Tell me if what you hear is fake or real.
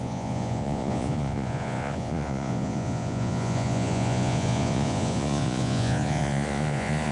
fake